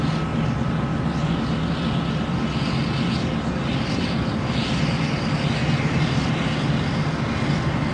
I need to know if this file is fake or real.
real